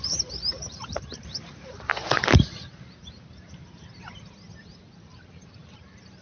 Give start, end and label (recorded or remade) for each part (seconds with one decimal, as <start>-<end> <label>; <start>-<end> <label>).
0.0-1.9 remade; 1.9-5.0 recorded; 5.0-6.2 remade